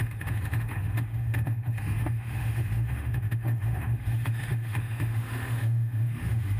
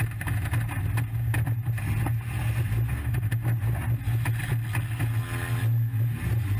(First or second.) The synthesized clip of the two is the first